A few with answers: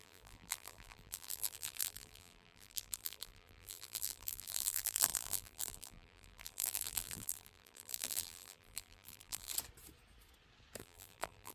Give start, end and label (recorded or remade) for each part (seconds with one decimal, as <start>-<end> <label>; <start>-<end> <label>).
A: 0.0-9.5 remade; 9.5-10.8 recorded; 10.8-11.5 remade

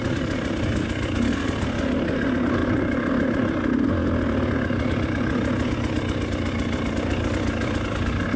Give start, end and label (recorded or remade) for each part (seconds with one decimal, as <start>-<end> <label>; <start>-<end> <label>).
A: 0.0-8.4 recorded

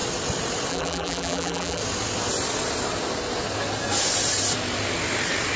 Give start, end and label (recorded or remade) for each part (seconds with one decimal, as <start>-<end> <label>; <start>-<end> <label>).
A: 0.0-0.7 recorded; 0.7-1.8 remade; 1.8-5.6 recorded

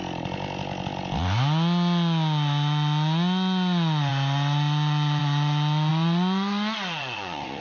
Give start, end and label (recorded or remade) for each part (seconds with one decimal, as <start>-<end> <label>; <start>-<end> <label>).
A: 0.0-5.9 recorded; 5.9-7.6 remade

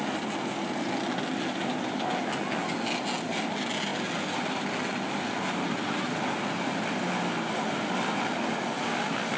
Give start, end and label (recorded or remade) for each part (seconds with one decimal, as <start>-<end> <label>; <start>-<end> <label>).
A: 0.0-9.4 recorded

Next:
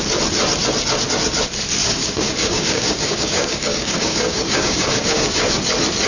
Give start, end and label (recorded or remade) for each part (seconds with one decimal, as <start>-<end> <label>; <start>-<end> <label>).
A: 0.0-1.8 recorded; 1.8-5.5 remade; 5.5-6.1 recorded

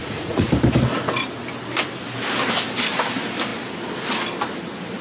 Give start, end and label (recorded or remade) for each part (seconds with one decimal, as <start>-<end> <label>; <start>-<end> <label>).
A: 0.0-0.5 remade; 0.5-5.0 recorded

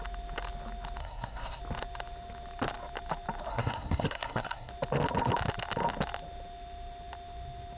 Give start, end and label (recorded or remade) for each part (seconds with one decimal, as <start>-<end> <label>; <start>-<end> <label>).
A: 0.0-1.0 recorded; 1.0-1.6 remade; 1.6-3.5 recorded; 3.5-4.7 remade; 4.7-7.8 recorded